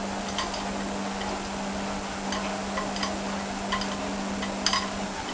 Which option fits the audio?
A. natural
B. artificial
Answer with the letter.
A